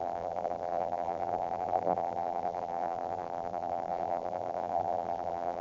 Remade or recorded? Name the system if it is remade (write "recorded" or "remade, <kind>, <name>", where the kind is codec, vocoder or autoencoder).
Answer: remade, vocoder, BigVGAN v2